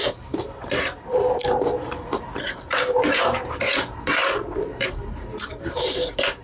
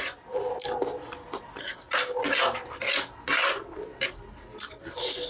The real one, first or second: second